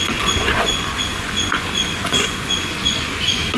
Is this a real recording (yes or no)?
no